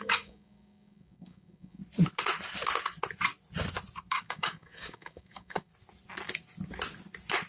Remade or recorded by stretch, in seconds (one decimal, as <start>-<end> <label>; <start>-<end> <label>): 0.0-1.8 remade; 1.8-4.1 recorded; 4.1-5.7 remade; 5.7-7.5 recorded